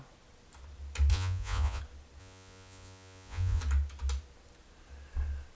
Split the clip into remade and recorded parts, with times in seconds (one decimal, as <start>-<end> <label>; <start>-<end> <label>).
0.0-1.1 recorded; 1.1-1.8 remade; 1.8-2.2 recorded; 2.2-3.6 remade; 3.6-5.5 recorded